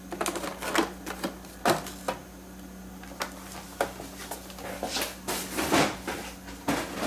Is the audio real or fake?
real